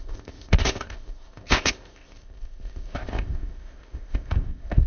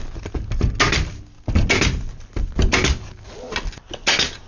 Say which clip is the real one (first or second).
second